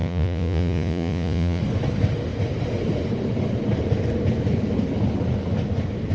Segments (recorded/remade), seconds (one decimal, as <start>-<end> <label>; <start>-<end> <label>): 0.0-1.6 remade; 1.6-6.1 recorded